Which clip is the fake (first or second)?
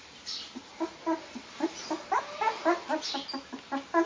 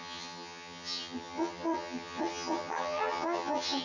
second